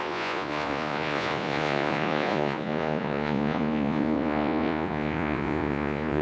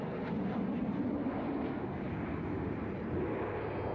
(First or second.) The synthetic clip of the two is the first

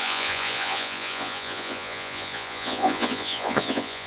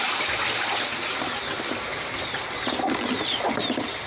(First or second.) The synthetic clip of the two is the first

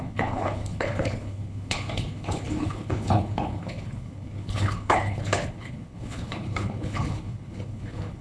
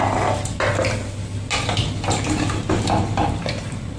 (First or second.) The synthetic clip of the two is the first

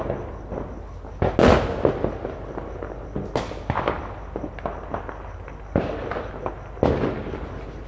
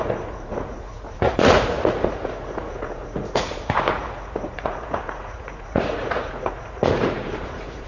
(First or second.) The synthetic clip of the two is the second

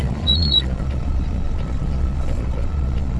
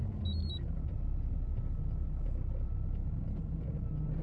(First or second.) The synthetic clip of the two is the first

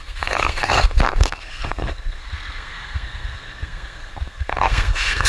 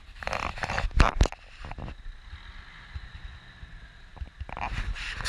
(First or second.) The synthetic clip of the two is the first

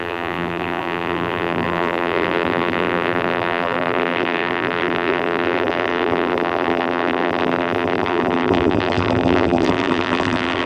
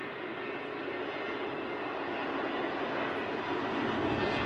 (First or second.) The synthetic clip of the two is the first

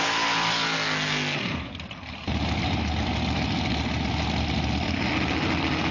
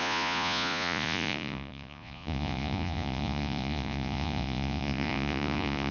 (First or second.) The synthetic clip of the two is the second